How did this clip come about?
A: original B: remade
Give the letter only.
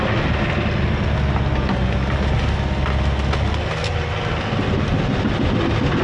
A